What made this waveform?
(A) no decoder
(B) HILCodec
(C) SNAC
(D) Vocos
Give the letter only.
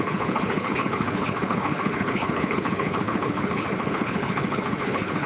B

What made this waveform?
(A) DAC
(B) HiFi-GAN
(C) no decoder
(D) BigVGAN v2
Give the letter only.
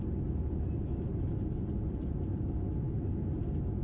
C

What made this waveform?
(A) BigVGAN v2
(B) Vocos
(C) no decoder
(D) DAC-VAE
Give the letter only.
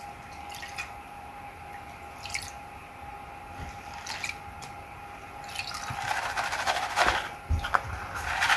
C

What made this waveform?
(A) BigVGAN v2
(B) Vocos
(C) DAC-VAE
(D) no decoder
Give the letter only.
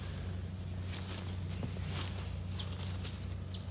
D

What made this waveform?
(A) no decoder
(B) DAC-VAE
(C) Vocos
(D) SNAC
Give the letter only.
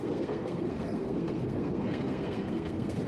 D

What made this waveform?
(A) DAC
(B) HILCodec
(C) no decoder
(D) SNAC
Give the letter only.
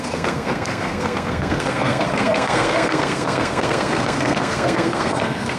D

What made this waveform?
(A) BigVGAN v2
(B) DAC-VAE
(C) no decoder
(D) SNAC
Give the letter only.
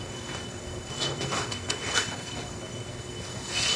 D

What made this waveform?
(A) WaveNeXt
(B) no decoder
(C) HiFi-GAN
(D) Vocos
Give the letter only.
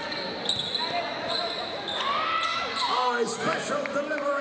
B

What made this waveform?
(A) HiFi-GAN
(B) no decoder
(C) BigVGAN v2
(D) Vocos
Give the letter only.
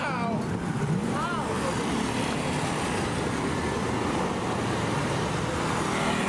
B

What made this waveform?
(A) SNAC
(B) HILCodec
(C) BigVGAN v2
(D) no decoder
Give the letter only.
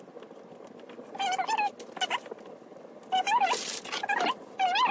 D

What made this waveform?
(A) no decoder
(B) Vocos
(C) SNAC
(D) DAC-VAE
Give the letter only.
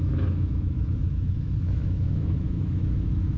D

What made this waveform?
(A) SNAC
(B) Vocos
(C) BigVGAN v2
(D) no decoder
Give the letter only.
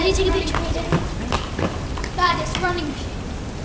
C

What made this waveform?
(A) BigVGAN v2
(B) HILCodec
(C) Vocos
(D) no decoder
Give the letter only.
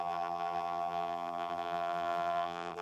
A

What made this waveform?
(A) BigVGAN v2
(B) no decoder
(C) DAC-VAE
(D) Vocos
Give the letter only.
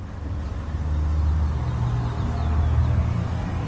B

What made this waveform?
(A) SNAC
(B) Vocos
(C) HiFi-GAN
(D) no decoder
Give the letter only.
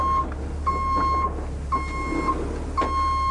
D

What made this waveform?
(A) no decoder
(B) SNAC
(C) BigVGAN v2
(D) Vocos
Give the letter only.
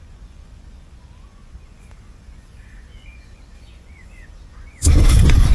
D